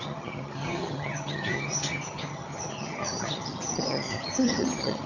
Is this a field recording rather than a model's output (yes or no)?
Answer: no